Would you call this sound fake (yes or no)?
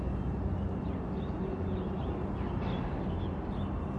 no